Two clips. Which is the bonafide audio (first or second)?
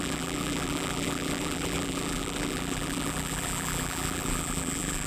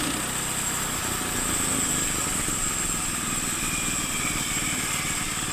second